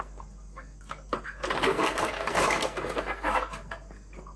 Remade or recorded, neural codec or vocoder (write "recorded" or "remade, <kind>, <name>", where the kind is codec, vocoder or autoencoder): remade, codec, SNAC